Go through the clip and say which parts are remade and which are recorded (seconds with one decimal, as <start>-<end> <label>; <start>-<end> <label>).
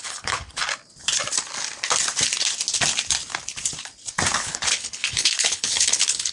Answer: 0.0-0.6 remade; 0.6-4.4 recorded; 4.4-6.3 remade